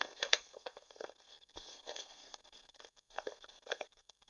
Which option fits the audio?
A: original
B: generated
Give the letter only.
B